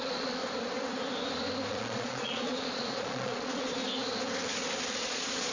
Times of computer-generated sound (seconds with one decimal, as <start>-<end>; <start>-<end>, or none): 0.0-0.4; 1.7-3.8; 5.0-5.5